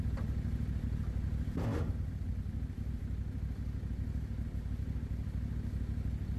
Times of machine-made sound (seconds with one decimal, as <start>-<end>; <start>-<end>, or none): none